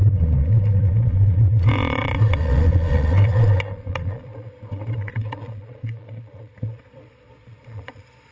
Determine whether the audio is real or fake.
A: fake